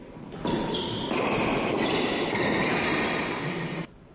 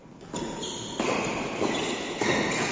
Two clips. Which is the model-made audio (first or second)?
first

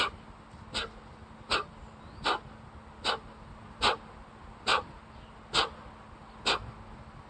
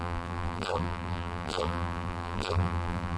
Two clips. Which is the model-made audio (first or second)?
second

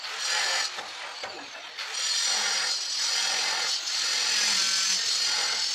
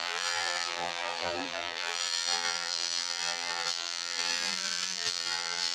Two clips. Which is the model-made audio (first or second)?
second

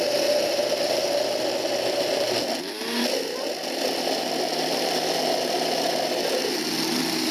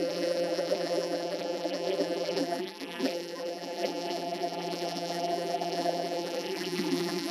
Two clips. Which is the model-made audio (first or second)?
second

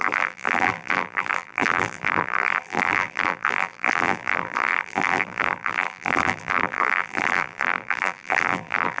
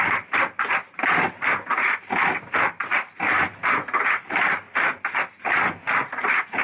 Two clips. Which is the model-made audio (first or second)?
first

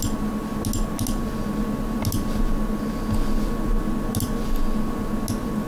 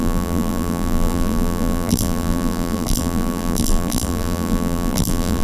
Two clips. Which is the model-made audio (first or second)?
second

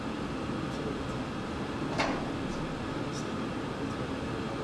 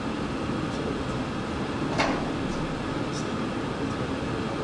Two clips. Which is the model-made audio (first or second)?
second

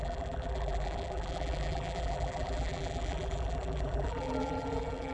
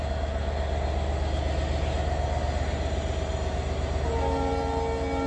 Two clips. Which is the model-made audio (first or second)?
first